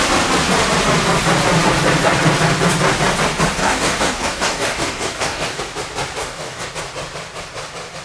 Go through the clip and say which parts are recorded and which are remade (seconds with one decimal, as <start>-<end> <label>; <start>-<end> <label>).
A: 0.0-3.6 recorded; 3.6-5.6 remade; 5.6-6.2 recorded; 6.2-6.7 remade; 6.7-8.0 recorded